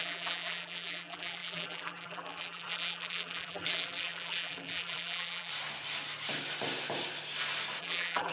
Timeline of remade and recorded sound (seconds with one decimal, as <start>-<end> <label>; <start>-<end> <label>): 0.0-5.5 remade; 5.5-7.8 recorded; 7.8-8.3 remade